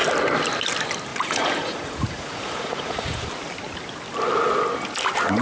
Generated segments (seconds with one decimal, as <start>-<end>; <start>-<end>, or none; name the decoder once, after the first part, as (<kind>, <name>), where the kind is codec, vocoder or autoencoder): 1.1-3.3 (vocoder, Vocos)